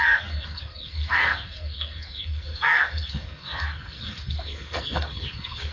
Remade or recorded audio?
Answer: remade